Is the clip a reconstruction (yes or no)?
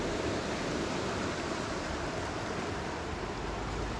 no